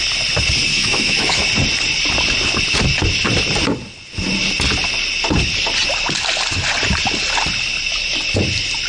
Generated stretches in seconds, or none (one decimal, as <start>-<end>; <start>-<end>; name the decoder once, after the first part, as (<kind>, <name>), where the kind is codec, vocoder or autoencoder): 0.7-1.4 (autoencoder, DAC-VAE)